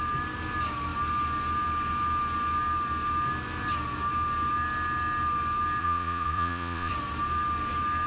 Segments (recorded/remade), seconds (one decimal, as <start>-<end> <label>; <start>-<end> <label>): 0.0-5.8 recorded; 5.8-6.9 remade; 6.9-8.1 recorded

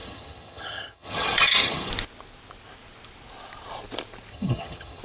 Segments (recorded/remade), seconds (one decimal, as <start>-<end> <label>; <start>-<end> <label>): 0.0-1.9 remade; 1.9-4.3 recorded; 4.3-5.0 remade

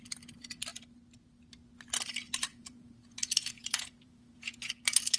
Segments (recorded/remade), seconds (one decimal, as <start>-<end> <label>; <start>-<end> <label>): 0.0-2.5 recorded; 2.5-4.7 remade; 4.7-5.2 recorded

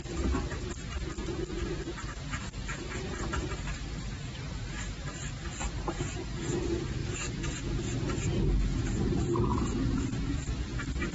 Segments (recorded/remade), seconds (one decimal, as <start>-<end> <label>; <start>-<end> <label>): 0.0-3.1 recorded; 3.1-6.4 remade; 6.4-11.1 recorded

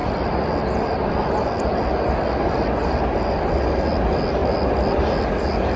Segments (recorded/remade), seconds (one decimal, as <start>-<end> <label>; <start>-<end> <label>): 0.0-5.8 recorded

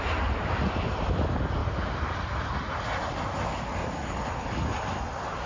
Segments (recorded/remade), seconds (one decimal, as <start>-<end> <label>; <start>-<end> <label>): 0.0-5.5 recorded